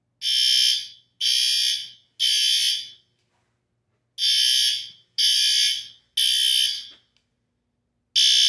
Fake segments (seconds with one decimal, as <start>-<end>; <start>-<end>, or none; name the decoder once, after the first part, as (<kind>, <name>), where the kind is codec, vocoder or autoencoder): none